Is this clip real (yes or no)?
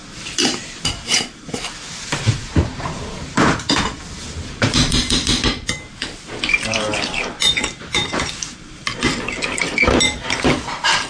no